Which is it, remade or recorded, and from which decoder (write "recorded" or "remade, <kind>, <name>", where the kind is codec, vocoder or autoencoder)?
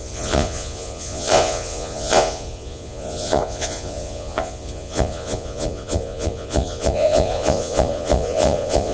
remade, vocoder, Vocos